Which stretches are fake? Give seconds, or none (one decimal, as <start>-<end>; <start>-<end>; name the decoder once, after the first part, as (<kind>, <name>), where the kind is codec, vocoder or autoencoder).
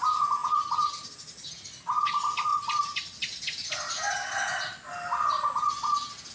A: none